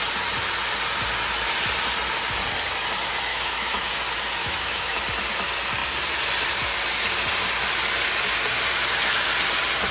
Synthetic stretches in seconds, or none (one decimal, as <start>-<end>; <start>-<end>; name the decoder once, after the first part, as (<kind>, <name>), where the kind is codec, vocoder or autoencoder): 3.3-3.9 (autoencoder, DAC-VAE); 4.4-5.0